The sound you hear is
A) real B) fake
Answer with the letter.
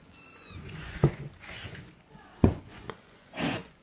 B